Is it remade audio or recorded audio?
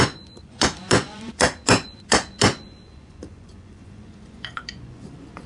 remade